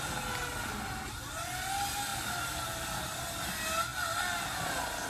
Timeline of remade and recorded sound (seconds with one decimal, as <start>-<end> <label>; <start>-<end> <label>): 0.0-5.1 recorded